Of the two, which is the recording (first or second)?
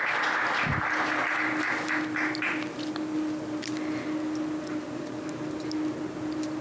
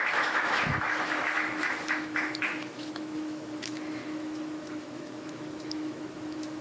first